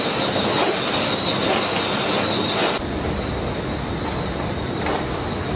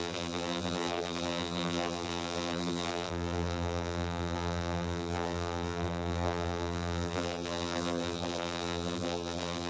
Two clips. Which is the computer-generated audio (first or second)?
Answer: second